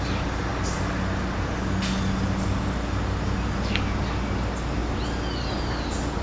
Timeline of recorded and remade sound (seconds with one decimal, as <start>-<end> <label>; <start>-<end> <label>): 0.0-6.2 recorded